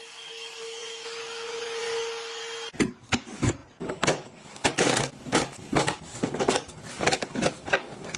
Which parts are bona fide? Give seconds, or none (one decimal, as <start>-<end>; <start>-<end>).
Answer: 2.4-2.9